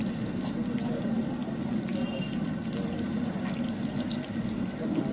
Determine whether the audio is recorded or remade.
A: recorded